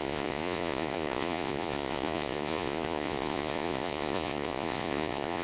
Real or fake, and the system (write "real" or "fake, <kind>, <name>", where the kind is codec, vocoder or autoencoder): fake, vocoder, Vocos